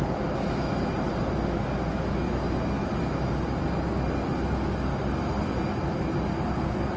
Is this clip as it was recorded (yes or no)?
yes